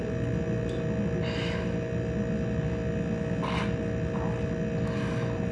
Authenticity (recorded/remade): recorded